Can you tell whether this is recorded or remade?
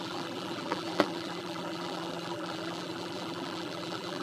remade